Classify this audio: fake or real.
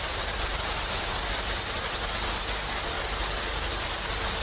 real